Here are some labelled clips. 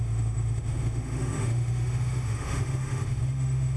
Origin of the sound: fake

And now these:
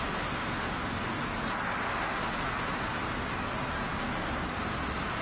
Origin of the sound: real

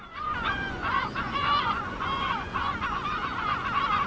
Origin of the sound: fake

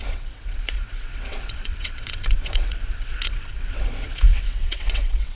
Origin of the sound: fake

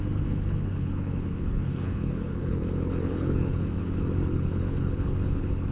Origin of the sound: fake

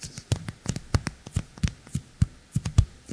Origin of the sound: real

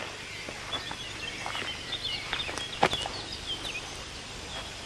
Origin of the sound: real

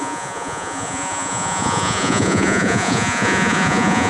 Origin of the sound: fake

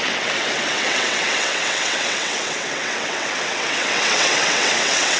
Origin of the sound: fake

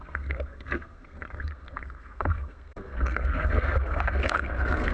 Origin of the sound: fake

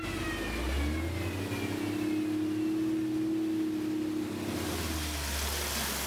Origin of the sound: real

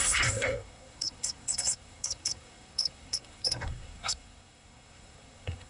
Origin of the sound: fake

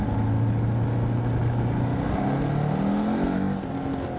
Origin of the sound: real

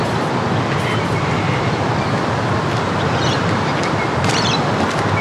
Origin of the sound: real